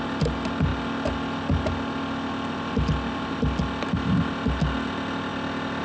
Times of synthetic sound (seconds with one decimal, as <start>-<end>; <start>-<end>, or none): none